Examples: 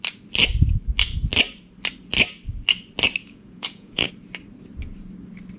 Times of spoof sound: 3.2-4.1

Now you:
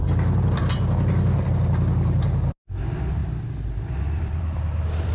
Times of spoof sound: 0.0-1.5; 3.2-5.1

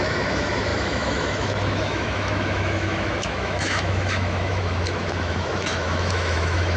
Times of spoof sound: 0.0-6.8

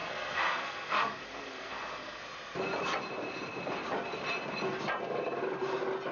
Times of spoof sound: 0.0-2.2

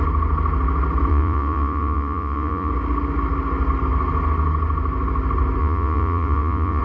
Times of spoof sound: 1.1-2.7; 5.6-6.8

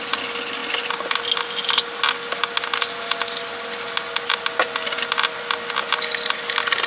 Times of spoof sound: none

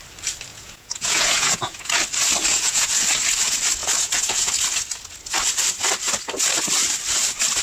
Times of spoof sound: 0.5-1.9; 2.5-3.0; 3.8-4.5